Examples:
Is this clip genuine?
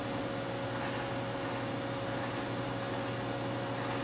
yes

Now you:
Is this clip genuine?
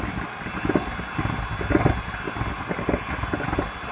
yes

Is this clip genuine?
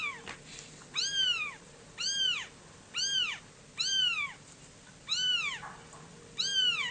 yes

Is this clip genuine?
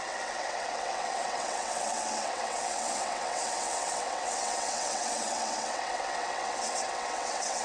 no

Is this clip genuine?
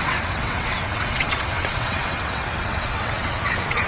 no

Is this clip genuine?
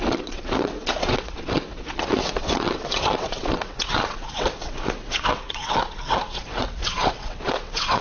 no